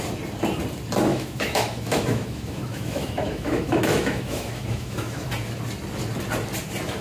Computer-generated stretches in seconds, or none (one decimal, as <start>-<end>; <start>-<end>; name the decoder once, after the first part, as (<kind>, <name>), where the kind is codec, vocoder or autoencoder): 1.1-5.3 (autoencoder, DAC-VAE)